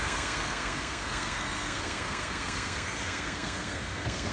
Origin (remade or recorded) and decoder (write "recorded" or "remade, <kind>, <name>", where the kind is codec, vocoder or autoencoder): remade, codec, SNAC